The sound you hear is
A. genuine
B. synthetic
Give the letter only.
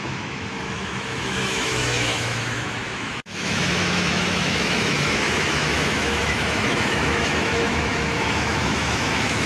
B